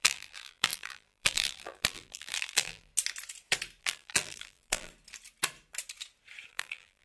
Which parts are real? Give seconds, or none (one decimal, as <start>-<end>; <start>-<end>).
2.9-3.8; 4.9-6.5